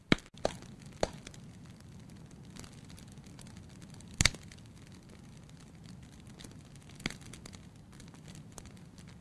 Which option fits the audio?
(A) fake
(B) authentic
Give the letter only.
B